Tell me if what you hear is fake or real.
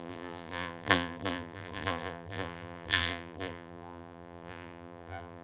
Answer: fake